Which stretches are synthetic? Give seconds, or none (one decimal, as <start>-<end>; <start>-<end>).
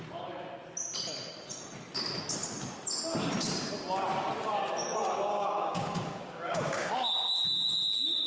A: 5.3-6.9